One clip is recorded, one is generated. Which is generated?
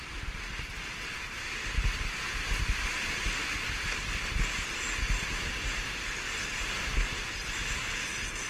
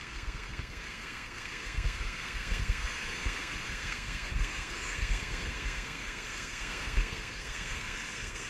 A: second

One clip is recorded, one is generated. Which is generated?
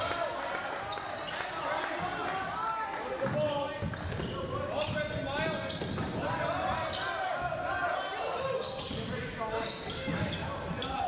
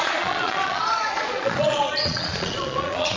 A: second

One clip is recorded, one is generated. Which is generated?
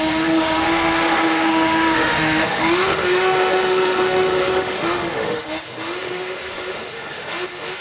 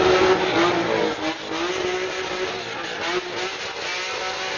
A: first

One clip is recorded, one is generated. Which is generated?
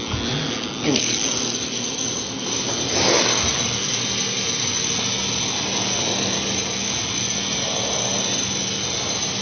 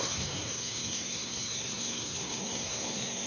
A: second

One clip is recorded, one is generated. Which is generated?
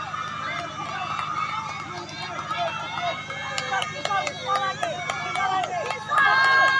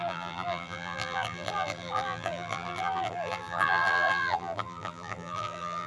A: second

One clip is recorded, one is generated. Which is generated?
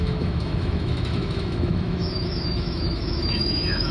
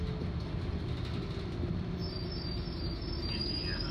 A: first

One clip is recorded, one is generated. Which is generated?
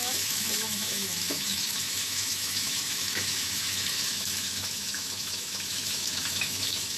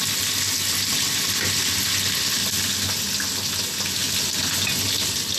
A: first